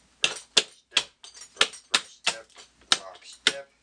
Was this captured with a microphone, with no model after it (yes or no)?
yes